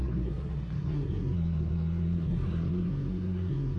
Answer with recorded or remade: remade